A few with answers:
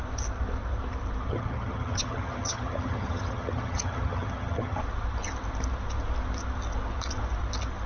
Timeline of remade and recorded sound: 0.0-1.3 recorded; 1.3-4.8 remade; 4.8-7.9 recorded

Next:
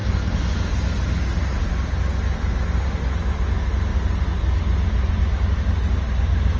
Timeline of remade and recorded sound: 0.0-6.6 recorded

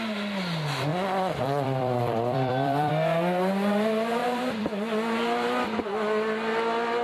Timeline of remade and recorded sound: 0.0-0.9 recorded; 0.9-2.9 remade; 2.9-4.2 recorded; 4.2-4.7 remade; 4.7-7.0 recorded

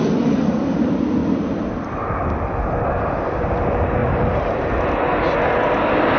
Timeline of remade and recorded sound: 0.0-4.0 recorded; 4.0-4.7 remade; 4.7-6.2 recorded

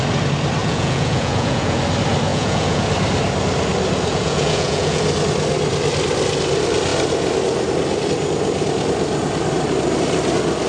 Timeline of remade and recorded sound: 0.0-0.6 recorded; 0.6-1.8 remade; 1.8-2.3 recorded; 2.3-2.9 remade; 2.9-4.1 recorded; 4.1-5.0 remade; 5.0-10.7 recorded

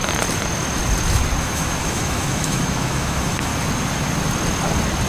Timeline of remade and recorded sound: 0.0-1.4 recorded; 1.4-3.5 remade; 3.5-5.1 recorded